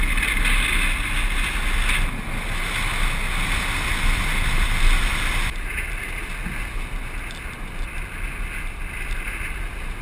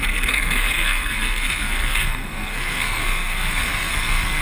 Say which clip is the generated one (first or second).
second